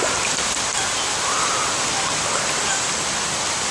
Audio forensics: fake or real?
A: real